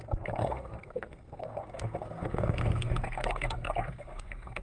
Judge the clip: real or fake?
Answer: fake